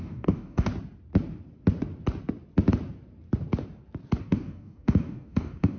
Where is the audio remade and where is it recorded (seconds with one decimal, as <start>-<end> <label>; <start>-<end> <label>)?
0.0-0.7 remade; 0.7-4.2 recorded; 4.2-5.8 remade

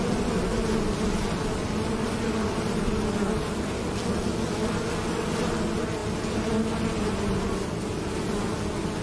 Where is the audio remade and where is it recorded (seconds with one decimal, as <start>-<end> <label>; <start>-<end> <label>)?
0.0-9.0 recorded

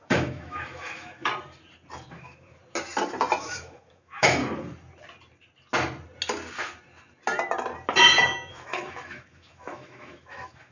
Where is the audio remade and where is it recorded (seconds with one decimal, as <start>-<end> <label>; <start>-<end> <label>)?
0.0-1.3 remade; 1.3-2.1 recorded; 2.1-2.6 remade; 2.6-3.4 recorded; 3.4-4.4 remade; 4.4-8.5 recorded; 8.5-10.7 remade

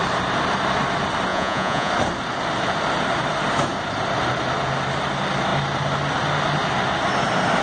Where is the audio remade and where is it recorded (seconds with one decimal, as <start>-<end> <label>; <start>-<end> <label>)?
0.0-1.3 recorded; 1.3-1.9 remade; 1.9-7.6 recorded